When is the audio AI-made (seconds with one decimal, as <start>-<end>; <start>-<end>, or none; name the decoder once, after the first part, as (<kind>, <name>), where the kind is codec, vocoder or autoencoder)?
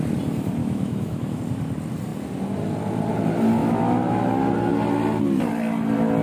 0.6-1.4 (autoencoder, DAC-VAE); 3.6-4.3